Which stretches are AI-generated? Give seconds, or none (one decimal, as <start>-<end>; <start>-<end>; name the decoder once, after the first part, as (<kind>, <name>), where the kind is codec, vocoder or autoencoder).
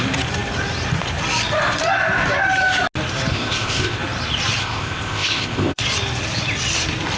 3.3-4.0 (codec, ZipCodec); 4.6-5.8